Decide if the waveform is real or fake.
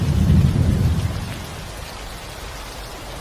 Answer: real